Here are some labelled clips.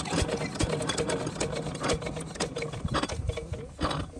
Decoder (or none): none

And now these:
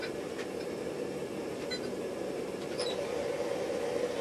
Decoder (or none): vocoder, BigVGAN v2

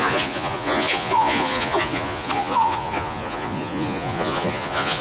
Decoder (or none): vocoder, Vocos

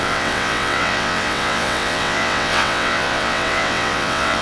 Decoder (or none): vocoder, WaveNeXt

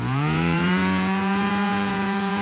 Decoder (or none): vocoder, Vocos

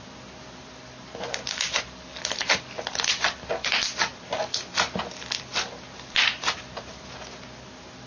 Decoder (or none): none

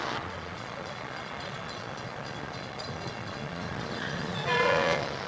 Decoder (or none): vocoder, Vocos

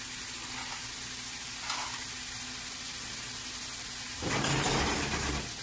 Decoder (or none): none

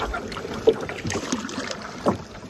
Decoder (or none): none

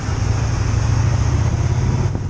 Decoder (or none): none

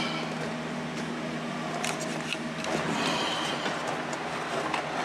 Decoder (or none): none